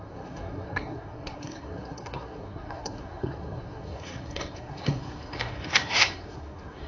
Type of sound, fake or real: fake